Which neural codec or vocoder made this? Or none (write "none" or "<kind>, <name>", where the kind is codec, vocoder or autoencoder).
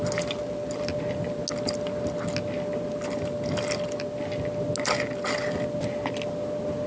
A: none